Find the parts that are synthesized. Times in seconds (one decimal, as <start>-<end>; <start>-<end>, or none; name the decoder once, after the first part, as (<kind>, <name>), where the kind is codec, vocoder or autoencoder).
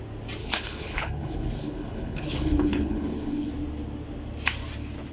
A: 0.4-3.5 (codec, HILCodec)